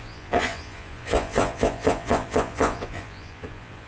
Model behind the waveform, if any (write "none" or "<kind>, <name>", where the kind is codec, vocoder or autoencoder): vocoder, Vocos